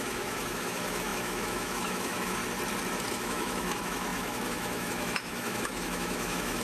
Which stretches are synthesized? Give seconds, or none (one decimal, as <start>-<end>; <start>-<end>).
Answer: 0.0-2.4; 3.1-6.6